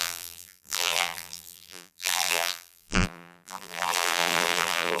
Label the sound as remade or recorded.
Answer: remade